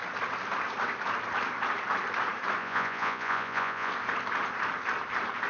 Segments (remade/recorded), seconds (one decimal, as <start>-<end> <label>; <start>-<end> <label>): 0.0-2.6 recorded; 2.6-3.9 remade; 3.9-5.5 recorded